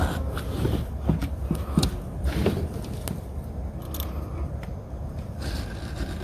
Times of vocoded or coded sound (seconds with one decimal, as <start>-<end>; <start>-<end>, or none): none